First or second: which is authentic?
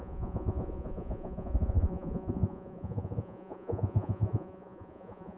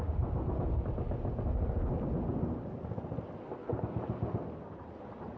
second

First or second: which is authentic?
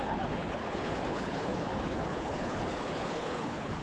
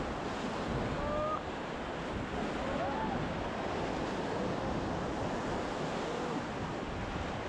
second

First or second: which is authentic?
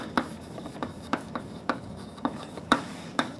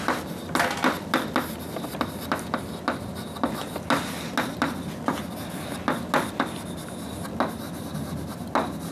second